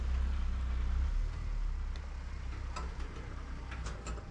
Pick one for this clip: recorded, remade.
recorded